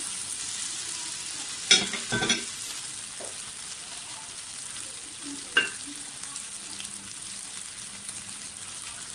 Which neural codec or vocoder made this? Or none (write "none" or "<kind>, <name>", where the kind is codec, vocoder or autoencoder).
none